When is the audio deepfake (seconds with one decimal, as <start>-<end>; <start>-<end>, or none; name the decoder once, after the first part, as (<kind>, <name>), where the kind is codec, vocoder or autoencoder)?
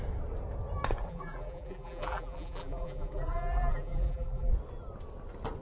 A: 1.1-4.5 (vocoder, BigVGAN v2)